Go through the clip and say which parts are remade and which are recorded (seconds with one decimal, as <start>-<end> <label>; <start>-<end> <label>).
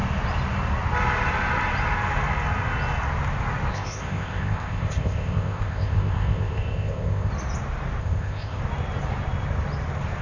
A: 0.0-3.7 recorded; 3.7-7.3 remade; 7.3-8.0 recorded; 8.0-8.6 remade; 8.6-10.2 recorded